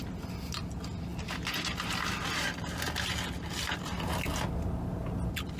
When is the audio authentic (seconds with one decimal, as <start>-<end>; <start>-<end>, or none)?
0.0-5.6